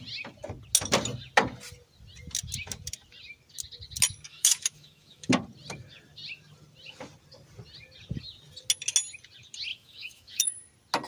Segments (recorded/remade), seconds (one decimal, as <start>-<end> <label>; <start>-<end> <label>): 0.0-4.3 recorded; 4.3-5.3 remade; 5.3-9.7 recorded; 9.7-10.5 remade; 10.5-11.1 recorded